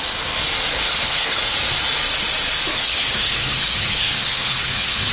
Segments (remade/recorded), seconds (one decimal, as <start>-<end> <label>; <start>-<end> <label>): 0.0-0.7 recorded; 0.7-1.4 remade; 1.4-2.7 recorded; 2.7-5.1 remade